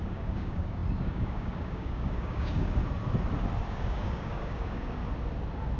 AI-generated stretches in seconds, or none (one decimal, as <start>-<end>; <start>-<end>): 0.0-2.8; 3.7-5.0